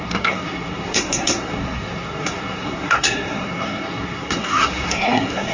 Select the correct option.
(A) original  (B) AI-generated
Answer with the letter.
B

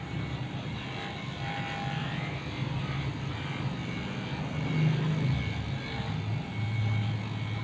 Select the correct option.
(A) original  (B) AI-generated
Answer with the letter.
A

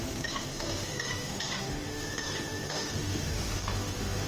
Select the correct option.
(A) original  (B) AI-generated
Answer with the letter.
B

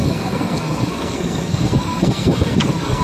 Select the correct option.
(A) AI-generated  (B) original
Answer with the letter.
A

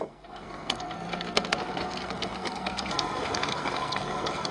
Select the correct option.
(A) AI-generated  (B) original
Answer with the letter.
A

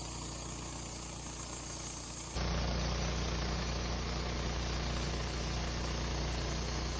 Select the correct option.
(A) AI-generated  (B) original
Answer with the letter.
B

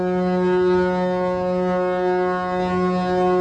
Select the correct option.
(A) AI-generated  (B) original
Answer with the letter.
B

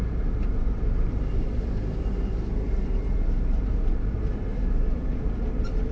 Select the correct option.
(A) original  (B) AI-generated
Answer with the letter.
B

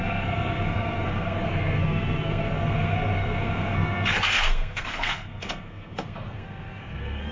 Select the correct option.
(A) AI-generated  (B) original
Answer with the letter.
A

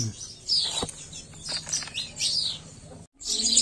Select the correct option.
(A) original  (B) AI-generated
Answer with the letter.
A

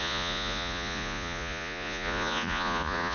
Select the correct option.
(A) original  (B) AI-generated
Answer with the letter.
B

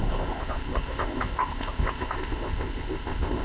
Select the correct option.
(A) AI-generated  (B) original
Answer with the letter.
A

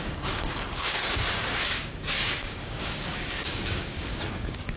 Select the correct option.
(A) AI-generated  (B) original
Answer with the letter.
A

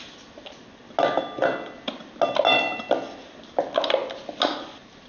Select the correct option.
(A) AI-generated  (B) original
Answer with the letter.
B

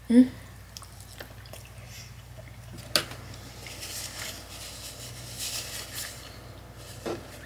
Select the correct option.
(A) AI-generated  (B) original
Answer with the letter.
B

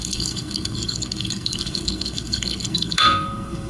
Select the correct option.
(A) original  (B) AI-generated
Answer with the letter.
B